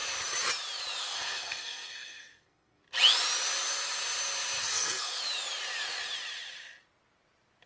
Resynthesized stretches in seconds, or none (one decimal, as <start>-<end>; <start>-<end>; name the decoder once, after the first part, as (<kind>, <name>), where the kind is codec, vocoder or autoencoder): 1.0-2.8 (codec, SNAC); 4.6-5.2